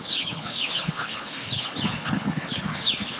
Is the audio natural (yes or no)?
no